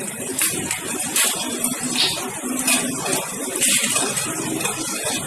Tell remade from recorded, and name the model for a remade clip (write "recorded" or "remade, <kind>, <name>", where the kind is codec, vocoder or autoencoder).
remade, vocoder, BigVGAN v2